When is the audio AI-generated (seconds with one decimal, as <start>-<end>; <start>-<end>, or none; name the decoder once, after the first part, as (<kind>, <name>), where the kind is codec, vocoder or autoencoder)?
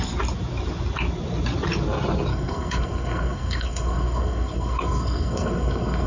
2.3-6.1 (codec, SNAC)